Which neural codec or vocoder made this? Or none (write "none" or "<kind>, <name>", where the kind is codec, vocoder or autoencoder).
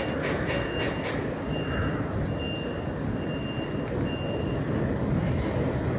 none